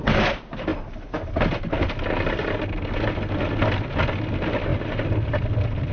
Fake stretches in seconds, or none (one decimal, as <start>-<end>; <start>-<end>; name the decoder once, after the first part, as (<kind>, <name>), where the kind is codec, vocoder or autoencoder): none